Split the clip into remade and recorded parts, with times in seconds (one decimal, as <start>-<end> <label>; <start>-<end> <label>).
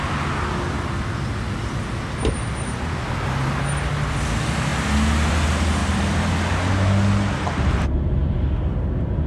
0.0-5.8 recorded; 5.8-6.7 remade; 6.7-9.3 recorded